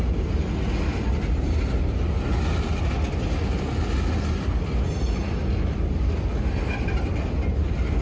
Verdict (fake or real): real